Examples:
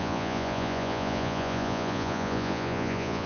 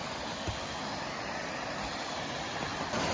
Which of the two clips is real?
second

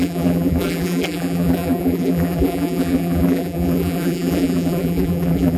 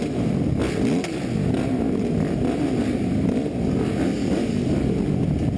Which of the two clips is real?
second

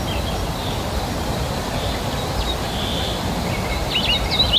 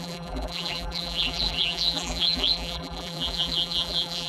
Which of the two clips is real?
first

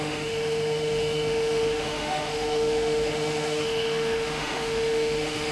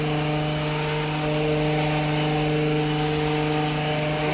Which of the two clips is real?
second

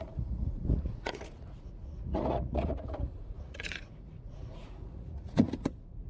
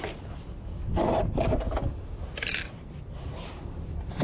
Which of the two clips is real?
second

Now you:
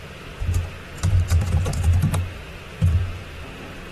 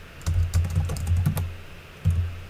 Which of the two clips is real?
second